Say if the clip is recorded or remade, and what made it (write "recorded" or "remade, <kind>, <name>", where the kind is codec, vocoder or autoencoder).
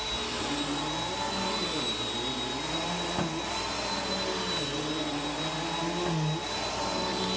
recorded